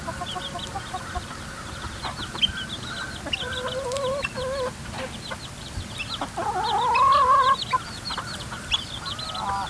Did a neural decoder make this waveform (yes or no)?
no